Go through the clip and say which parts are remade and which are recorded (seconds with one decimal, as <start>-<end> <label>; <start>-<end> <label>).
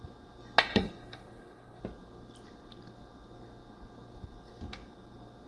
0.0-0.7 recorded; 0.7-1.8 remade; 1.8-5.5 recorded